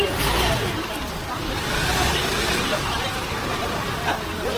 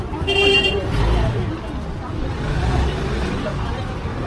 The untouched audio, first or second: second